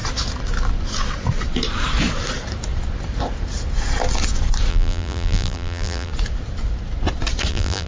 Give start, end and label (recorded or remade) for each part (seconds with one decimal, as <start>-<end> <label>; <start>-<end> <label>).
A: 0.0-4.7 recorded; 4.7-6.1 remade; 6.1-7.5 recorded; 7.5-7.9 remade